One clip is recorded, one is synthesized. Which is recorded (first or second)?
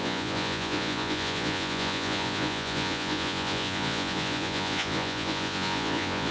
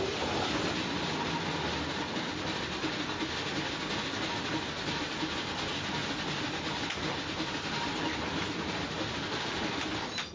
second